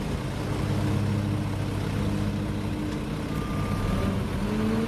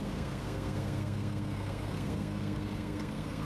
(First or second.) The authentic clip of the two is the first